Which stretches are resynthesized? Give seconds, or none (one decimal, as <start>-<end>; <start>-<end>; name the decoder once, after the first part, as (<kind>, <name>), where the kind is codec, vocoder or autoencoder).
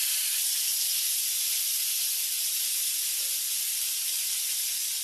none